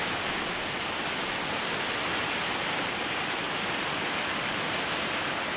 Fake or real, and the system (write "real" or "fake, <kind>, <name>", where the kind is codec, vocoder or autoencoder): real